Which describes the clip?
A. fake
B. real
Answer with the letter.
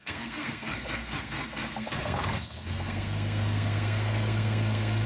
A